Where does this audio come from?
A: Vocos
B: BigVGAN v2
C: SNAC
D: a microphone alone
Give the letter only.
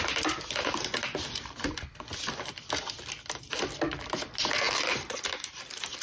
D